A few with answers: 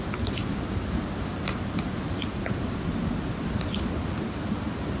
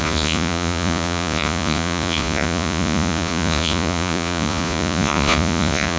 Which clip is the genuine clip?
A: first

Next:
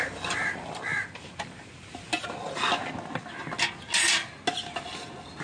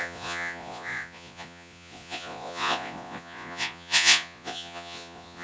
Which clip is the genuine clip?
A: first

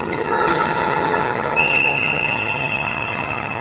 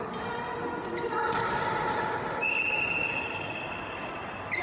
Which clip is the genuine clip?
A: second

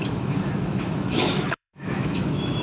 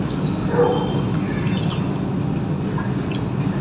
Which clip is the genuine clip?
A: second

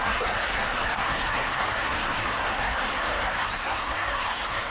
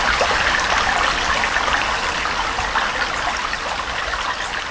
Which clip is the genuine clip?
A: second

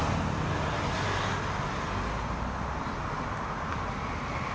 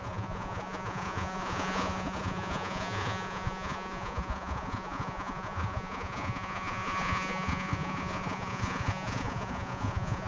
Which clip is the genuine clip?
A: first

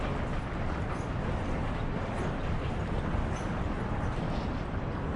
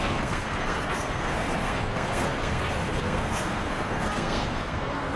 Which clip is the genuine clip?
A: first